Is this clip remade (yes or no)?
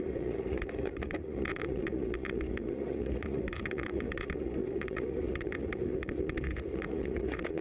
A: yes